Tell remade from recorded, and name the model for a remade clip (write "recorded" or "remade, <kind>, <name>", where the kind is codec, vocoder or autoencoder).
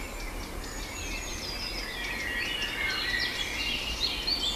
recorded